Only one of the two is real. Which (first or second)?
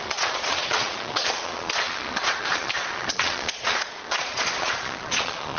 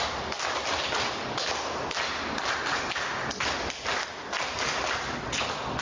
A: second